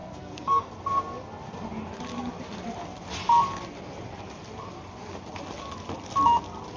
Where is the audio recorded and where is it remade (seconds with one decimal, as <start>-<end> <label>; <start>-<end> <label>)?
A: 0.0-0.7 remade; 0.7-6.8 recorded